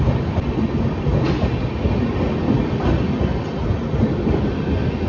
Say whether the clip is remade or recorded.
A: recorded